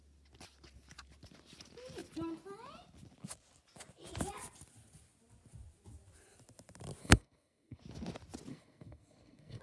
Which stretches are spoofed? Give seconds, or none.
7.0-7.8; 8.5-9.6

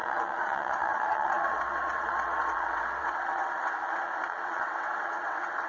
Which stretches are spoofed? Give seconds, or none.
0.0-5.7

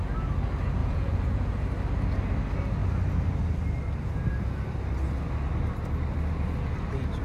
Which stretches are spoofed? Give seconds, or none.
0.8-1.5

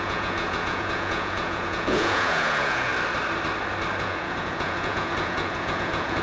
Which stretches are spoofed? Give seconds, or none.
0.0-2.9; 4.0-6.2

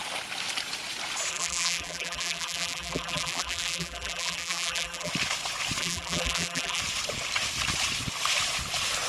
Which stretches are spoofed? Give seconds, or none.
1.3-5.1; 5.8-6.8

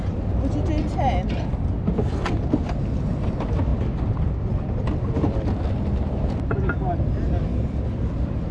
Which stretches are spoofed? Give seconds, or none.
none

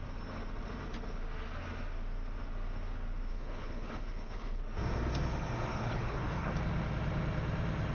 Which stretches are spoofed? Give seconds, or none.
3.3-4.6; 5.7-6.5